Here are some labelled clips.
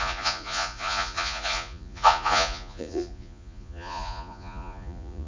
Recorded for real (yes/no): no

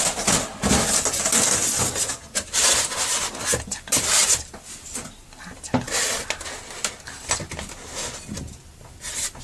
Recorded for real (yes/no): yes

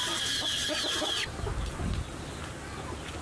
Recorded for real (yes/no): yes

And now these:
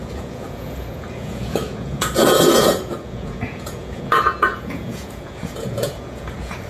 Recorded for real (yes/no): no